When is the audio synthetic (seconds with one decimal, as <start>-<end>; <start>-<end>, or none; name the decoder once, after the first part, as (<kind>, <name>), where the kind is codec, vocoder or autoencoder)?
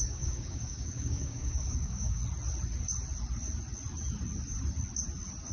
0.0-2.2 (codec, DAC)